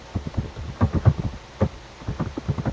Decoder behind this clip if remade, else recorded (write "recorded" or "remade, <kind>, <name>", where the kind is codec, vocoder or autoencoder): recorded